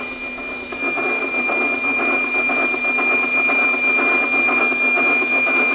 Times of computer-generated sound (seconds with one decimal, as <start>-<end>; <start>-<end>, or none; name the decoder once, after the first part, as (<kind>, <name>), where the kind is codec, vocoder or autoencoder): 0.0-1.2 (autoencoder, DAC-VAE); 4.6-5.7